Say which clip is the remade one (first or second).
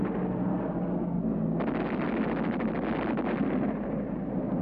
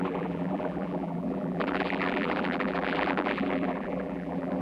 second